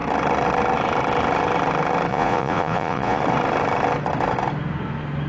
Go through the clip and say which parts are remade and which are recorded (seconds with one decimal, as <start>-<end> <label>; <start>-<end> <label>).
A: 0.0-2.1 recorded; 2.1-3.2 remade; 3.2-5.3 recorded